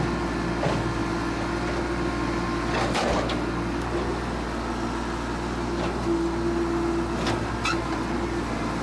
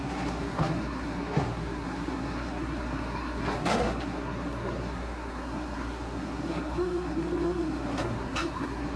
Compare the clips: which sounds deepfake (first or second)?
second